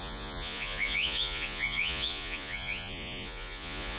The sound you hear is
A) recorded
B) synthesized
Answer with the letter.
B